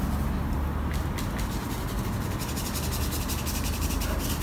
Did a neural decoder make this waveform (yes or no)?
no